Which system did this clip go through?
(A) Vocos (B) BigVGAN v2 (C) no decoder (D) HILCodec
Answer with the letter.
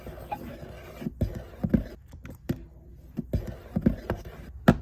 C